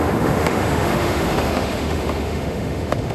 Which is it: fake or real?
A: fake